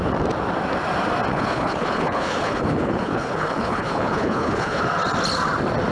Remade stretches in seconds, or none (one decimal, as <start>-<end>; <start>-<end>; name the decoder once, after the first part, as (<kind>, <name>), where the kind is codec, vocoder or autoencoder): 1.3-4.8 (codec, HILCodec)